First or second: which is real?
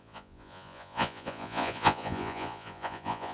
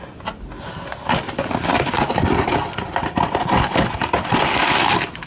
second